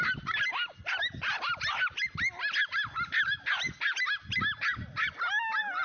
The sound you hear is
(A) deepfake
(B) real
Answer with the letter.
B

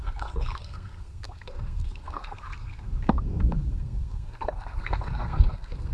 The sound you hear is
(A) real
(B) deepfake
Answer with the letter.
B